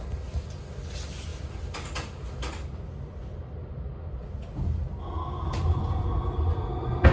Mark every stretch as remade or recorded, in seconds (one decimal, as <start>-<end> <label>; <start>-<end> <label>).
0.0-7.1 recorded